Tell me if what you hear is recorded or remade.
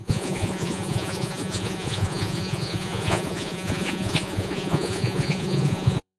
remade